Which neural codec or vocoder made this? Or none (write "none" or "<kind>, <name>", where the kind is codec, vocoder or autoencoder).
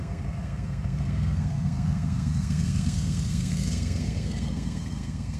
codec, SNAC